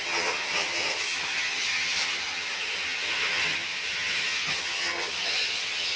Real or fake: fake